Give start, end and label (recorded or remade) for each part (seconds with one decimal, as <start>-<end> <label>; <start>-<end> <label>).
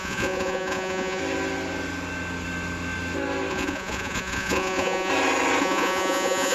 0.0-1.2 remade; 1.2-3.5 recorded; 3.5-5.1 remade; 5.1-5.6 recorded; 5.6-6.5 remade